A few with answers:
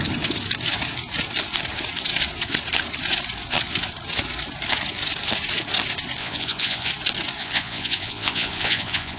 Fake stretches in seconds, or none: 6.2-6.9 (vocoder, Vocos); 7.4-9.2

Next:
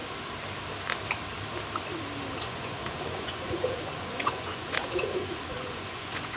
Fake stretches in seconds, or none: 2.4-6.4 (vocoder, Vocos)

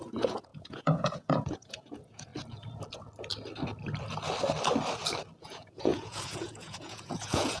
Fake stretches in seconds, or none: 0.0-2.3 (vocoder, Vocos); 5.4-7.6